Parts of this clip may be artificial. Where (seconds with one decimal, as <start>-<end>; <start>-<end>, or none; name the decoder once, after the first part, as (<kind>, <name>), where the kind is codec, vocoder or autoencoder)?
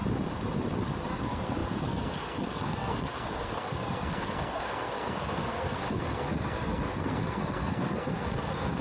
1.2-8.8 (codec, SNAC)